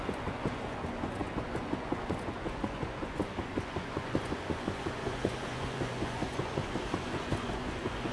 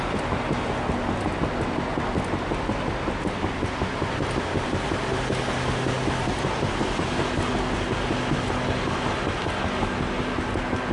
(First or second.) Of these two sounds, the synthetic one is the first